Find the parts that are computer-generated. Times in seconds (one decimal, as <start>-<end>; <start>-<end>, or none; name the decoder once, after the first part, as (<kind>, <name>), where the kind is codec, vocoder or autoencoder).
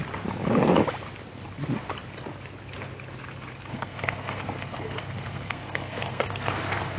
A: 3.7-7.0 (codec, SNAC)